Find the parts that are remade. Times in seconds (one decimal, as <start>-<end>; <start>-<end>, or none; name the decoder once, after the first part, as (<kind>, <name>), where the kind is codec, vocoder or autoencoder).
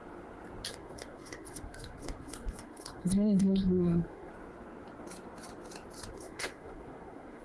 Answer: 0.7-4.3 (codec, SNAC); 6.1-7.4